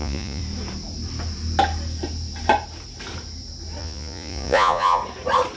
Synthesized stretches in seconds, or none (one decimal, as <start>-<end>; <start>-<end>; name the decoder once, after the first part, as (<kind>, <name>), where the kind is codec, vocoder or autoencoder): 0.0-0.4 (vocoder, Vocos); 3.8-5.0